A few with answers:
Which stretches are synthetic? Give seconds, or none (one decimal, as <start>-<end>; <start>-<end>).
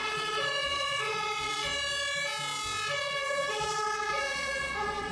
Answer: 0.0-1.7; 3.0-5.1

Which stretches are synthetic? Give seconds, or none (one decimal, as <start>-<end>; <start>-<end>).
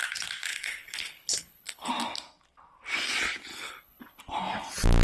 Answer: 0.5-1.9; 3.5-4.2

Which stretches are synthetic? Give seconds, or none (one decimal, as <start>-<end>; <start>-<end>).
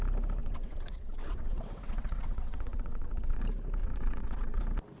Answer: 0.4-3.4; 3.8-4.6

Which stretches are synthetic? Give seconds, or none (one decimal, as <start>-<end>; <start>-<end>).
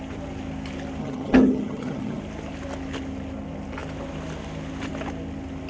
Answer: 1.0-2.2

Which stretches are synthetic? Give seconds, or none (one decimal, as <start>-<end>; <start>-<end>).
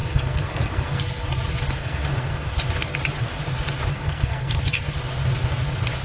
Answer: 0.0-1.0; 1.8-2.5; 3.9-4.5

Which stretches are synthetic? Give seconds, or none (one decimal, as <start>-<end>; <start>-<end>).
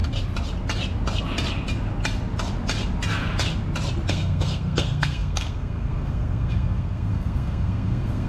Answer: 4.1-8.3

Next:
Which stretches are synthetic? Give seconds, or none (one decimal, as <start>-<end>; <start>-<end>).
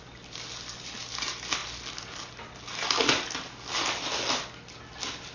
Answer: none